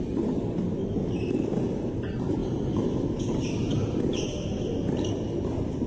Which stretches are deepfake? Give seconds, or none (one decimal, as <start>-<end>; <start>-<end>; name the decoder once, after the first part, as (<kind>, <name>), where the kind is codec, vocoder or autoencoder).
0.0-0.8 (vocoder, BigVGAN v2); 1.4-5.9